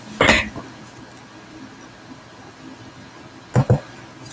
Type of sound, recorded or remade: recorded